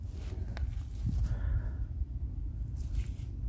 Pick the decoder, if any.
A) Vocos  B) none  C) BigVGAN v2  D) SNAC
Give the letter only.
B